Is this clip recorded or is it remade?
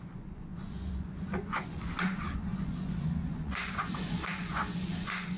remade